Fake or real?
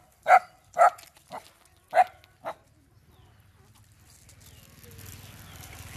real